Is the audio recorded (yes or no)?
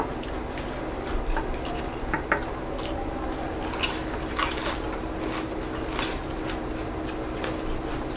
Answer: yes